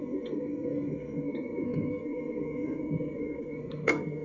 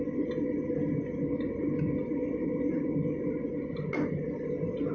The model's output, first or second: first